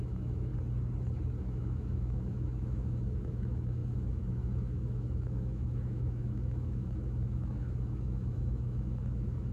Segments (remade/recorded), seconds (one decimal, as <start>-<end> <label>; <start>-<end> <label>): 0.0-0.5 remade; 0.5-1.4 recorded; 1.4-9.5 remade